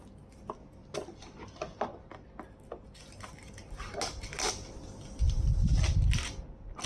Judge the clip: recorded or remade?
recorded